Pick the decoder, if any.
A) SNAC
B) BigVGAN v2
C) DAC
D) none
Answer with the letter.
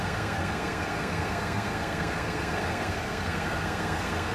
A